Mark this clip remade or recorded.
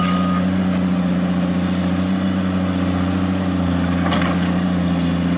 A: recorded